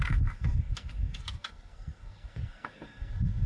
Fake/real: fake